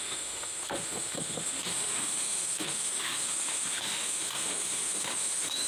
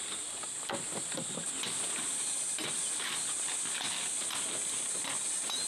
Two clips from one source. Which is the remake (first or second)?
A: first